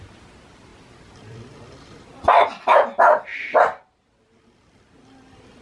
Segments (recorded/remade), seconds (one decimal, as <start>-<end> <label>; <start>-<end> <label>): 0.0-0.7 recorded; 0.7-2.6 remade; 2.6-5.6 recorded